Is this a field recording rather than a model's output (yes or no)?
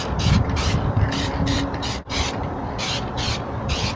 no